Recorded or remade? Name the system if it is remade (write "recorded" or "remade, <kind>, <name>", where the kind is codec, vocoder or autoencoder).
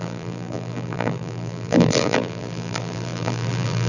remade, vocoder, BigVGAN v2